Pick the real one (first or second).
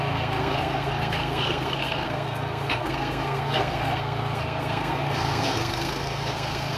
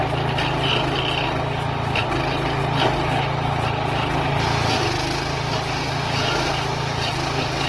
second